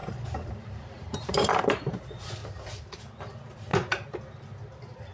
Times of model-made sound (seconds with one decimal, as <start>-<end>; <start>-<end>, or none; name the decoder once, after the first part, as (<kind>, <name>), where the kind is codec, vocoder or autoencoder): 0.0-1.8 (vocoder, BigVGAN v2)